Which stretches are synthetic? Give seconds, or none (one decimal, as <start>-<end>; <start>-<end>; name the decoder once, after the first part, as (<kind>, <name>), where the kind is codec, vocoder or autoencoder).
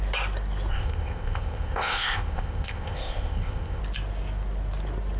0.7-3.8 (codec, ZipCodec)